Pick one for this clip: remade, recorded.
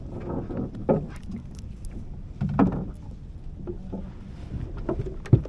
recorded